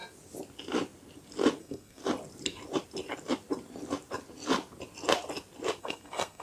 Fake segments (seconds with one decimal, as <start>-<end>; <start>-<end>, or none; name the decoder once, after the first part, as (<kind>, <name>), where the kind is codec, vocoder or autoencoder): 1.6-2.0 (codec, SNAC); 5.8-6.4